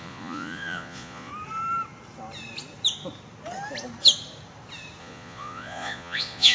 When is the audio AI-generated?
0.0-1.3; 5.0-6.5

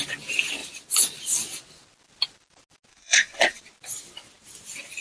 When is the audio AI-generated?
2.9-3.6

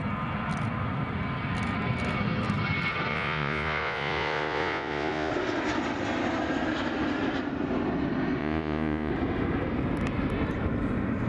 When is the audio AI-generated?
3.1-5.3; 8.4-9.1